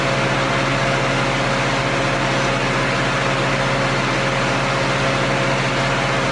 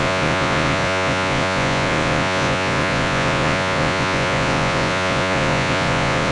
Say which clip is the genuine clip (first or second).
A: first